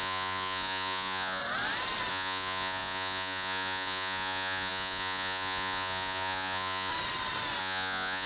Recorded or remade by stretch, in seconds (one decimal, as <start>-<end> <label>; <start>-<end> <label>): 0.0-1.4 remade; 1.4-2.1 recorded; 2.1-6.9 remade; 6.9-7.6 recorded; 7.6-8.3 remade